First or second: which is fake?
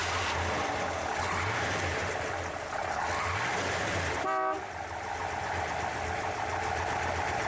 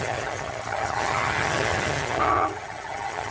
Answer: second